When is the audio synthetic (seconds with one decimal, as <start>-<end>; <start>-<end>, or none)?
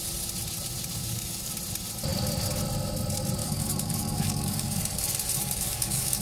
1.0-1.5; 3.4-4.8; 5.4-6.2